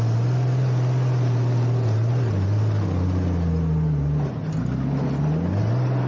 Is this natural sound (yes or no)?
yes